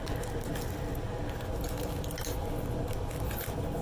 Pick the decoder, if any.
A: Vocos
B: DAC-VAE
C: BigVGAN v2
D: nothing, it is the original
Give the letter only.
D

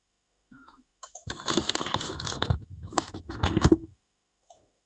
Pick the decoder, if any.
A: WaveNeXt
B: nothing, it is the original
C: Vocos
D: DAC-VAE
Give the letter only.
D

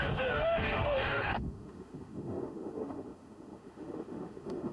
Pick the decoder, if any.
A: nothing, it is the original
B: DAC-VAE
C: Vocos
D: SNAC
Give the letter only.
B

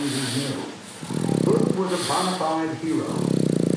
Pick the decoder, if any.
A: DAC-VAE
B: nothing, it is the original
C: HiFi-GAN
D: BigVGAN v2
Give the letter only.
B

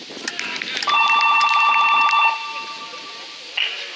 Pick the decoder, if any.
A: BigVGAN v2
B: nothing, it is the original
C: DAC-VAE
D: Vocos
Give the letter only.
B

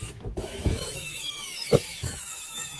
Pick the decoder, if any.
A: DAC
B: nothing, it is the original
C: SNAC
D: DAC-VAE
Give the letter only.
D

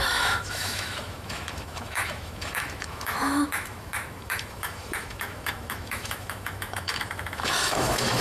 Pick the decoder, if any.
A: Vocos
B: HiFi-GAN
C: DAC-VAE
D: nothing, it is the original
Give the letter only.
C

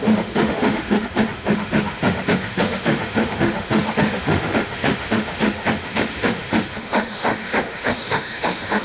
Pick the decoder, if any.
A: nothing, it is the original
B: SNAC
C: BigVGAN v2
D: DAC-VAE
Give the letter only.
D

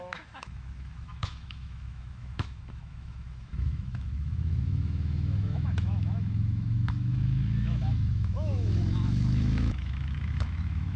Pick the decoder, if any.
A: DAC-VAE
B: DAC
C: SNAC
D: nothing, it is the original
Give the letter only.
A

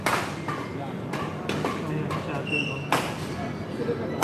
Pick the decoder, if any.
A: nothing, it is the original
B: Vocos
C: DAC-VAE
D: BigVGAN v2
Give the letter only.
A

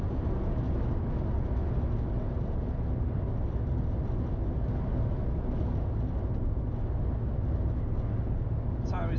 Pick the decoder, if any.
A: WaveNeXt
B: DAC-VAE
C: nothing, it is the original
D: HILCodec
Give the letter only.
C